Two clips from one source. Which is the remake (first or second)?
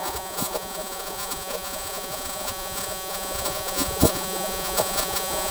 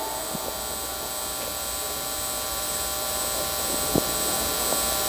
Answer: first